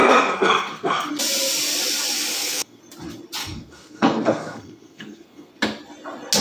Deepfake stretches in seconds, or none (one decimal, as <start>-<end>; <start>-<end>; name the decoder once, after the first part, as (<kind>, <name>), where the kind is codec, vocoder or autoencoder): 0.0-1.1 (codec, SNAC); 2.3-2.8; 3.4-5.5